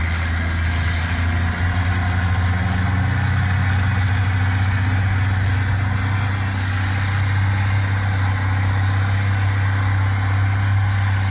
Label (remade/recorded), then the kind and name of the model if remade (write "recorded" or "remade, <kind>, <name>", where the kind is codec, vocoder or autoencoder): recorded